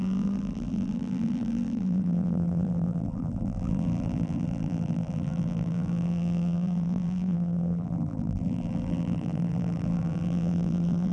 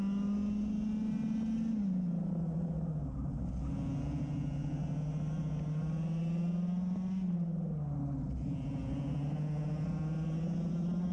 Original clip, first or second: second